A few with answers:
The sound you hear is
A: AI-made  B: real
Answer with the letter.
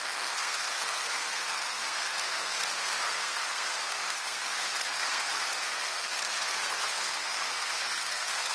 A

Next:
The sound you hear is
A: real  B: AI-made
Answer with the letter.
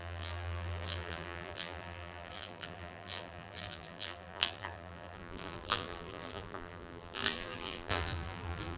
B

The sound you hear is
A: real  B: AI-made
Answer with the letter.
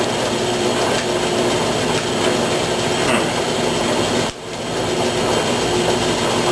A